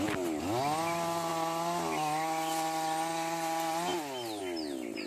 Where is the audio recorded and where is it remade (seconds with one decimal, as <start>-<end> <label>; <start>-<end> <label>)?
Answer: 0.0-5.1 recorded

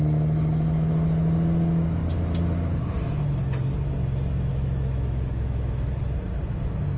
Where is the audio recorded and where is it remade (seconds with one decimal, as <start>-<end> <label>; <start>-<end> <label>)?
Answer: 0.0-4.5 recorded; 4.5-6.0 remade; 6.0-7.0 recorded